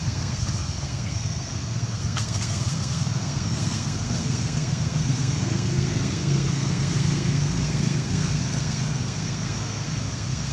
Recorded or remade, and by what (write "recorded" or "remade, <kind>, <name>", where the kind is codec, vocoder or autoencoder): remade, codec, SNAC